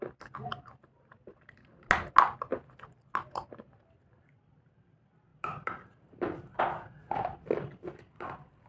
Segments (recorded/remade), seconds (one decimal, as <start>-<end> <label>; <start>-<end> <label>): 0.0-0.5 recorded; 0.5-1.1 remade; 1.1-5.3 recorded; 5.3-8.7 remade